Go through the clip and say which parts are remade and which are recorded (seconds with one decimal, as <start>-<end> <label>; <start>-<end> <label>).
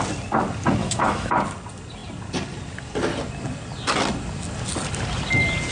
0.0-0.8 recorded; 0.8-1.3 remade; 1.3-5.7 recorded